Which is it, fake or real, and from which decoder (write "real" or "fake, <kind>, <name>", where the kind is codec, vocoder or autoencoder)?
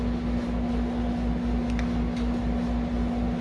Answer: real